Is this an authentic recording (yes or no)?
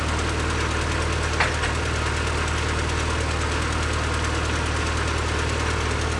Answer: yes